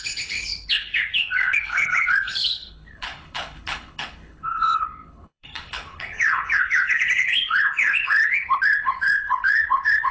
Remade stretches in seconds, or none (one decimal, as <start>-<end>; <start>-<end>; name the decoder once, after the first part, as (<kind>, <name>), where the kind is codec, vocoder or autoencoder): 0.0-10.1 (codec, HILCodec)